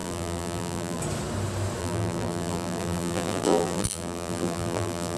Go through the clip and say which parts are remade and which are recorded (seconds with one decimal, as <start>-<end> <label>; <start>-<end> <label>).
0.0-1.0 remade; 1.0-1.8 recorded; 1.8-5.2 remade